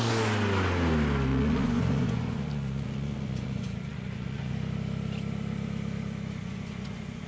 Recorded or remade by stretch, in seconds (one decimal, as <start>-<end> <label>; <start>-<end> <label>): 0.0-1.3 recorded; 1.3-4.5 remade; 4.5-6.4 recorded; 6.4-7.3 remade